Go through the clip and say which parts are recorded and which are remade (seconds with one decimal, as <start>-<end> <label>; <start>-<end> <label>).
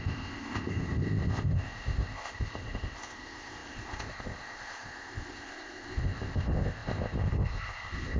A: 0.0-8.2 remade